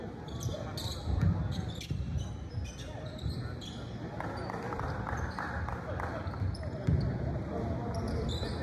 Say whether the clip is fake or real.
fake